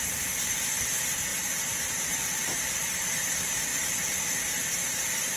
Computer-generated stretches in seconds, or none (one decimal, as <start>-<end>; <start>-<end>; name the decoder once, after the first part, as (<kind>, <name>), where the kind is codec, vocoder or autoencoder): 1.3-2.9 (vocoder, BigVGAN v2); 3.7-4.2